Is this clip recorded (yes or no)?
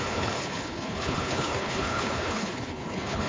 no